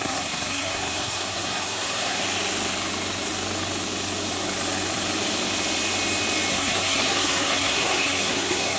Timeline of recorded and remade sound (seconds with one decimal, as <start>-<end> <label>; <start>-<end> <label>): 0.0-2.2 remade; 2.2-6.5 recorded; 6.5-8.8 remade